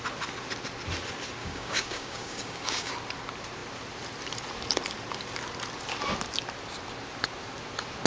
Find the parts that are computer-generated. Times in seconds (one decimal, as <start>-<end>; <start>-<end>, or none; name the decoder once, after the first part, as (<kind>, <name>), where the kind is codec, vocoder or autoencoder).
1.4-2.9 (codec, DAC)